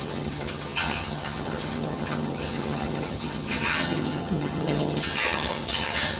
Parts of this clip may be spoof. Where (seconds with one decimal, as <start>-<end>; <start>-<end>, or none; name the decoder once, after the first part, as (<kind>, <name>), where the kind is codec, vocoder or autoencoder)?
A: 0.0-6.2 (vocoder, HiFi-GAN)